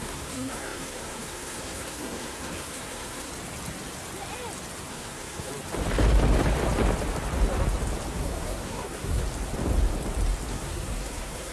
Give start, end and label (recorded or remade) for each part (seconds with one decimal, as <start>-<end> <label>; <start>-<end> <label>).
0.0-3.3 remade; 3.3-4.9 recorded; 4.9-5.5 remade; 5.5-8.1 recorded; 8.1-9.2 remade; 9.2-10.5 recorded; 10.5-11.5 remade